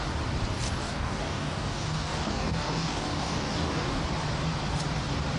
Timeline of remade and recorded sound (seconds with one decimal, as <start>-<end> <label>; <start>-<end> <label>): 0.0-0.8 recorded; 0.8-4.0 remade; 4.0-5.4 recorded